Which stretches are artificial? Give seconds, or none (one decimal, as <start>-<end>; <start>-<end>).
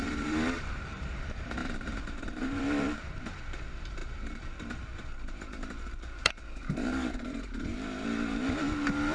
0.0-9.1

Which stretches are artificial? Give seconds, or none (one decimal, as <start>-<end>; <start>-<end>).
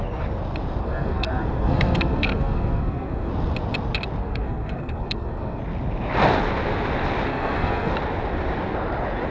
0.8-3.3; 4.2-5.6; 7.3-7.9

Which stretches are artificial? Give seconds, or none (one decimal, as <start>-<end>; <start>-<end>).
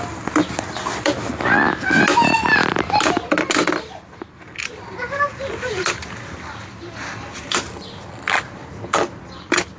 0.0-1.1; 4.6-9.8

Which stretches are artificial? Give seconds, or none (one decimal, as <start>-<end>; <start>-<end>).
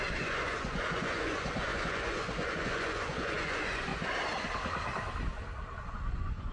0.0-3.9; 5.9-6.5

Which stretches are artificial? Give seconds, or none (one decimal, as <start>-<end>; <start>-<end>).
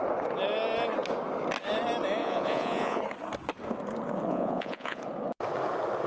2.2-3.0; 4.3-5.0